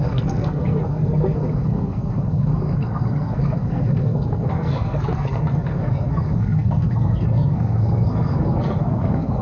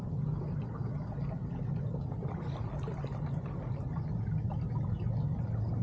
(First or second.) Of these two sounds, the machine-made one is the first